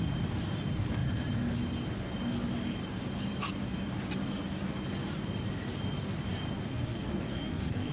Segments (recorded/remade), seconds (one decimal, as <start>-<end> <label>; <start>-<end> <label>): 0.0-6.7 recorded; 6.7-7.9 remade